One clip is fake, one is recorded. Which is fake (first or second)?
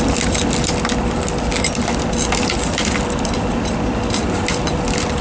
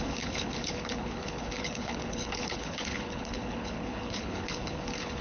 second